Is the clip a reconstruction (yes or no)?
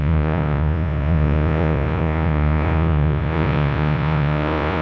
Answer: yes